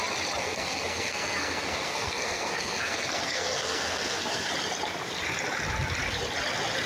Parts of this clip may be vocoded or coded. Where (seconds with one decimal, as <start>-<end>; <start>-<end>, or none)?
0.4-4.5